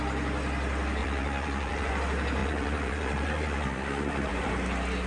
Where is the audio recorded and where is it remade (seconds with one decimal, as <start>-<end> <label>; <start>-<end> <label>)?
0.0-1.0 recorded; 1.0-1.9 remade; 1.9-2.4 recorded; 2.4-4.5 remade; 4.5-5.1 recorded